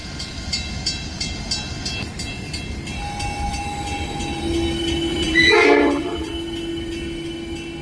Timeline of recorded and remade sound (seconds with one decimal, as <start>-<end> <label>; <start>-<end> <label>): 0.0-5.1 recorded; 5.1-6.3 remade; 6.3-7.8 recorded

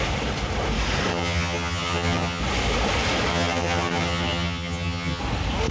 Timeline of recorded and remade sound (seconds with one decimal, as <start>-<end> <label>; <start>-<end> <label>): 0.0-1.1 recorded; 1.1-2.4 remade; 2.4-3.3 recorded; 3.3-5.2 remade; 5.2-5.7 recorded

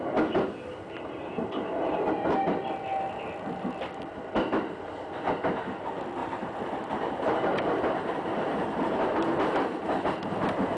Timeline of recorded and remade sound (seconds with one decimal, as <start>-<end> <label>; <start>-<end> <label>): 0.0-6.2 recorded; 6.2-10.3 remade; 10.3-10.8 recorded

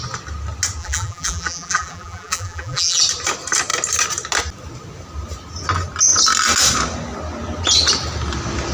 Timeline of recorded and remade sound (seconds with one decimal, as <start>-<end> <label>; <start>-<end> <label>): 0.0-0.8 recorded; 0.8-3.0 remade; 3.0-8.7 recorded

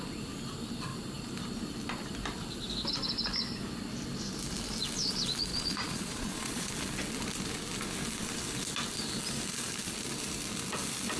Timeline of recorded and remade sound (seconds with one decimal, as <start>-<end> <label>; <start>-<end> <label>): 0.0-5.5 recorded; 5.5-6.7 remade; 6.7-11.2 recorded